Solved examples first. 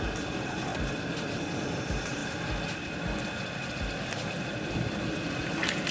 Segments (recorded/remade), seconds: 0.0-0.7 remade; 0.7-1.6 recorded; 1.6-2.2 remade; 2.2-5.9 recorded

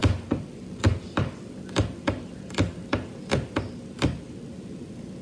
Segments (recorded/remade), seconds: 0.0-5.2 recorded

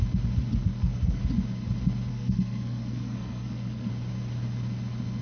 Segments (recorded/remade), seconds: 0.0-0.6 recorded; 0.6-1.2 remade; 1.2-2.1 recorded; 2.1-3.9 remade; 3.9-5.2 recorded

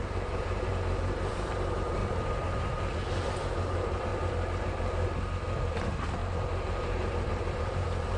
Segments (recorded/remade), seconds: 0.0-0.7 remade; 0.7-1.3 recorded; 1.3-2.0 remade; 2.0-3.1 recorded; 3.1-4.1 remade; 4.1-5.7 recorded; 5.7-6.2 remade; 6.2-6.8 recorded; 6.8-8.2 remade

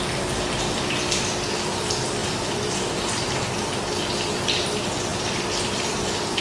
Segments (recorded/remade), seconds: 0.0-2.2 recorded; 2.2-3.8 remade; 3.8-6.4 recorded

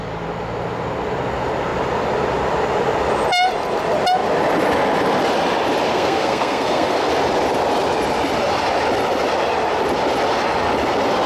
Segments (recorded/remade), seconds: 0.0-5.9 recorded; 5.9-7.1 remade; 7.1-11.3 recorded

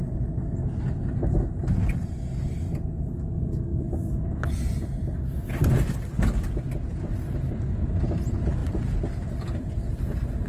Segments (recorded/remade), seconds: 0.0-10.5 recorded